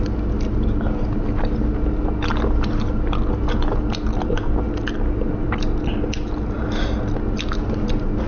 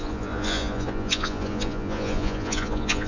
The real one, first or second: first